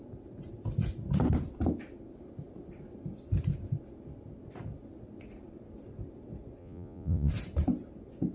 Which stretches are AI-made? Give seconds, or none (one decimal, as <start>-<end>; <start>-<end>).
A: 6.6-7.3